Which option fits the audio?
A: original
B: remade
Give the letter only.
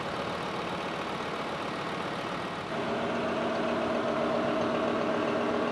A